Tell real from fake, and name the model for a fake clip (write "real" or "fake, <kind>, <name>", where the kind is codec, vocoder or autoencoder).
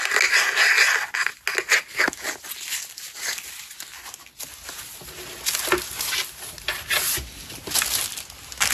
real